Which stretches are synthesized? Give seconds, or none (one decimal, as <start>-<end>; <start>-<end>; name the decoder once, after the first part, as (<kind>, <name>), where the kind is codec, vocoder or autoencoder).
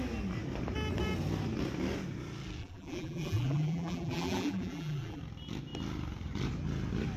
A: 2.6-5.2 (vocoder, BigVGAN v2)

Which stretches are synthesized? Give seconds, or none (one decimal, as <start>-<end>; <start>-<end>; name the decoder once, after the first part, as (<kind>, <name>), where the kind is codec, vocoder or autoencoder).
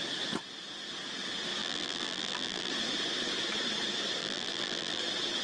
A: 1.6-2.7 (vocoder, BigVGAN v2); 4.2-5.0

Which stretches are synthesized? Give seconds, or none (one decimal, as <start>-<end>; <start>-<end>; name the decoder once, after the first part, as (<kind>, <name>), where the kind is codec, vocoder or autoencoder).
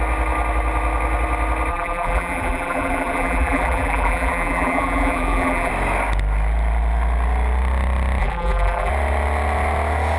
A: 1.7-5.7 (vocoder, BigVGAN v2); 8.2-8.9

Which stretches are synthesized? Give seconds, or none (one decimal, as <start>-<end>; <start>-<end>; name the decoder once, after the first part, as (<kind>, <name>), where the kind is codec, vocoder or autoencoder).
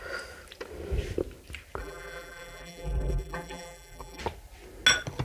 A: 1.8-4.2 (vocoder, BigVGAN v2)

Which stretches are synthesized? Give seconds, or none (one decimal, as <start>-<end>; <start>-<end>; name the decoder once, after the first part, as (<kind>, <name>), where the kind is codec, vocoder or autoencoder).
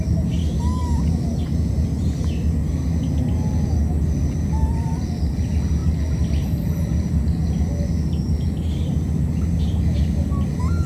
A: none